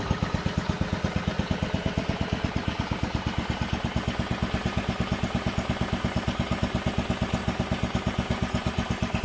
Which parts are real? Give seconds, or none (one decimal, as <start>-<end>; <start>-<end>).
0.0-9.2